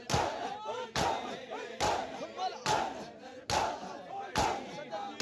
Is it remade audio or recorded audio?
recorded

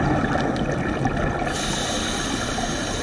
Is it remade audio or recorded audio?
recorded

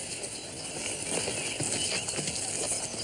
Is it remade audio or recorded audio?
recorded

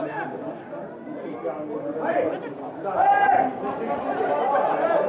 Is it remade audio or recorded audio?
recorded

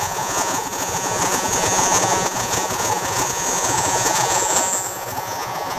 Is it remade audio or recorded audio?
remade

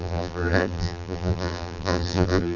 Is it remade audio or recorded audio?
remade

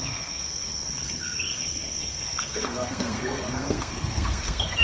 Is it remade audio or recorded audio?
remade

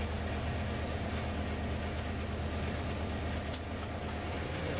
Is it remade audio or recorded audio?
recorded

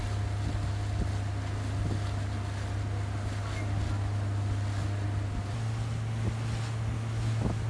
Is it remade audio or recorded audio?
recorded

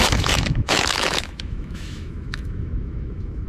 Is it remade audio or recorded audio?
remade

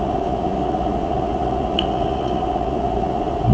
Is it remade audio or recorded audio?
remade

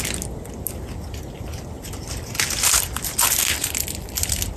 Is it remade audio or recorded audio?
recorded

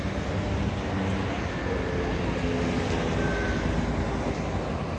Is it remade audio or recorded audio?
recorded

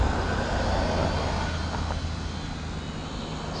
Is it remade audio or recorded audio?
recorded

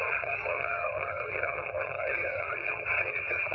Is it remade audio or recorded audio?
remade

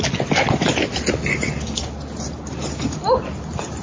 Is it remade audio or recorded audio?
recorded